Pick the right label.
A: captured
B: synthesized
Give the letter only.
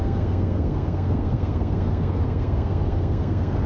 B